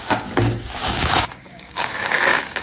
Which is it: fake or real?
fake